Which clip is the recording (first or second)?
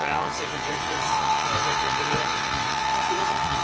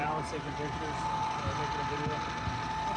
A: second